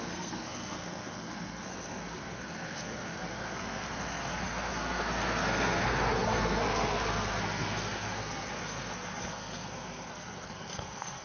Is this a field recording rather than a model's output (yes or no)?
no